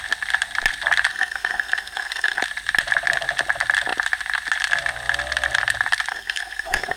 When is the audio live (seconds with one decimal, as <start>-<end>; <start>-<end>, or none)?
0.0-1.1; 2.4-6.1